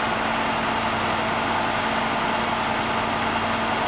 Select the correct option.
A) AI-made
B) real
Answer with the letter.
B